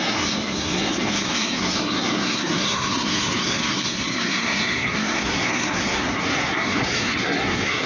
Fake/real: fake